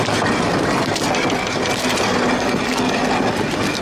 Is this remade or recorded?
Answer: recorded